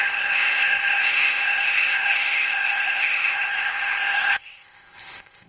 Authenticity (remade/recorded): remade